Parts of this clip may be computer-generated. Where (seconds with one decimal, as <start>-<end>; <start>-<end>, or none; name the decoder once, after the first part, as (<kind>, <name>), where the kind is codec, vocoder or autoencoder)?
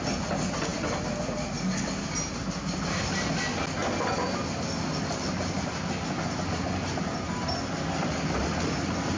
none